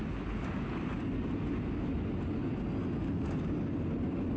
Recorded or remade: recorded